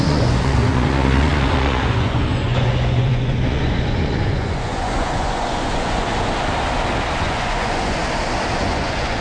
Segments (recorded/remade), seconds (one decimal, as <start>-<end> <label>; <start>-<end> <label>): 0.0-6.1 remade; 6.1-7.2 recorded; 7.2-8.0 remade; 8.0-8.6 recorded; 8.6-9.2 remade